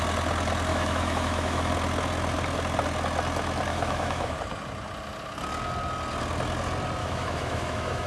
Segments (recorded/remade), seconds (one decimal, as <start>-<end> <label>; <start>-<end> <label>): 0.0-0.7 recorded; 0.7-1.7 remade; 1.7-3.7 recorded; 3.7-4.3 remade; 4.3-7.0 recorded; 7.0-8.1 remade